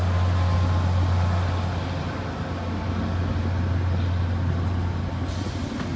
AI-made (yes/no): no